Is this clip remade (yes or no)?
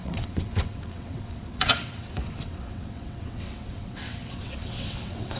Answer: yes